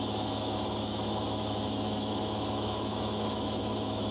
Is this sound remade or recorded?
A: remade